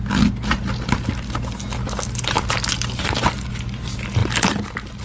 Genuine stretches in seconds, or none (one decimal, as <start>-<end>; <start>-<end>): 0.0-5.0